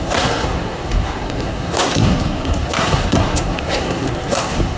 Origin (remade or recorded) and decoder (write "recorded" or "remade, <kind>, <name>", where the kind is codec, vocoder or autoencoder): remade, codec, SNAC